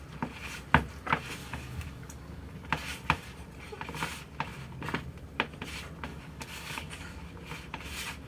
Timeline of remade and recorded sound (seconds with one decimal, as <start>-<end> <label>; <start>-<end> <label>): 0.0-1.4 recorded; 1.4-2.7 remade; 2.7-6.1 recorded; 6.1-7.3 remade; 7.3-8.3 recorded